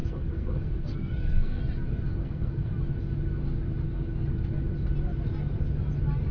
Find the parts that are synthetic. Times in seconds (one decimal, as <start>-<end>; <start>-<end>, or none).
0.0-1.6; 2.1-2.7